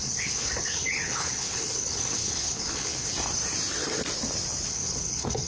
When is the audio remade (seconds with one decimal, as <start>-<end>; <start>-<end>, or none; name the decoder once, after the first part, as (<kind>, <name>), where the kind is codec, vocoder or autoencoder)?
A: 0.0-3.1 (codec, HILCodec); 4.7-5.5